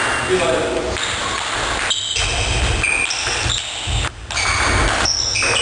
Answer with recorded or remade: recorded